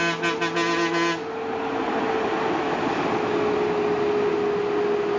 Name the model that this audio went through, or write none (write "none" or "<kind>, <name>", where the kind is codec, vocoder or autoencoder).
none